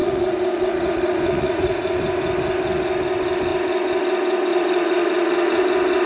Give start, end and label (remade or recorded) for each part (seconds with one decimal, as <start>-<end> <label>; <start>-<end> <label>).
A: 0.0-2.0 remade; 2.0-4.5 recorded; 4.5-5.6 remade; 5.6-6.1 recorded